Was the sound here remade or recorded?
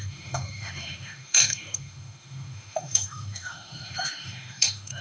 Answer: remade